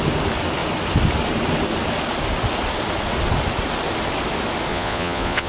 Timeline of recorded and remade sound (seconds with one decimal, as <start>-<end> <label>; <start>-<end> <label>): 0.0-4.7 recorded; 4.7-5.5 remade